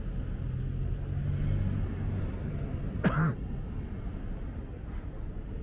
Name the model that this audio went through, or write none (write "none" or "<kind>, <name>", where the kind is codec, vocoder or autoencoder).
none